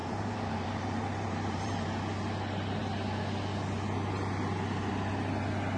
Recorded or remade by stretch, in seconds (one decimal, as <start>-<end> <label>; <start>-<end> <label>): 0.0-1.9 remade; 1.9-5.8 recorded